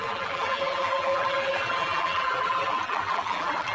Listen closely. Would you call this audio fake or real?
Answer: fake